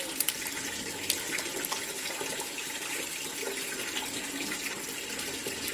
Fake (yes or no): no